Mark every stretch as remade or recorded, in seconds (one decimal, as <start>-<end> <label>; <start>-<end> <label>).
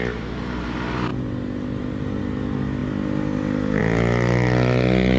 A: 0.0-5.2 recorded